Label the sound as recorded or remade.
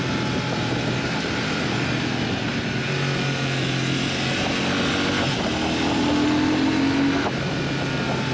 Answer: recorded